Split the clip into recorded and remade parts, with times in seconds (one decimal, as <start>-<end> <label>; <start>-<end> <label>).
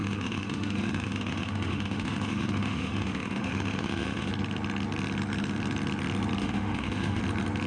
0.0-4.3 remade; 4.3-6.4 recorded; 6.4-7.2 remade; 7.2-7.7 recorded